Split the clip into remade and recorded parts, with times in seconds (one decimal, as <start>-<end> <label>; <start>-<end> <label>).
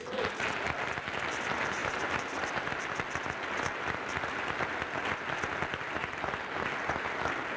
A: 0.0-7.6 recorded